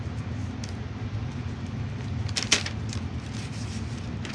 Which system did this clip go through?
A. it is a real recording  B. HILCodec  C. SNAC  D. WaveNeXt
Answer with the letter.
A